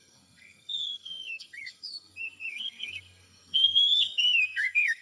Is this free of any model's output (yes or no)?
no